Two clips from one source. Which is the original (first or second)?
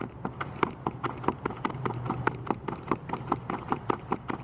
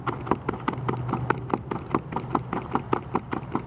second